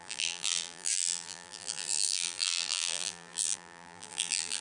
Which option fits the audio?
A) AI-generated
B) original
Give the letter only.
A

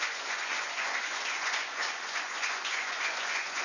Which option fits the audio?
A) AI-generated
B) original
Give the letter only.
A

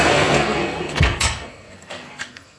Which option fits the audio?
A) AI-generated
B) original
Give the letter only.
A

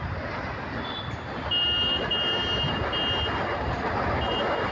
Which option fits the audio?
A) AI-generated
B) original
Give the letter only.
B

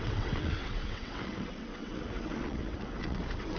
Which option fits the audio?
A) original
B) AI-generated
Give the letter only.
B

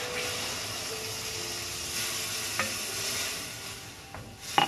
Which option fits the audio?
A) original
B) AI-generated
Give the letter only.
A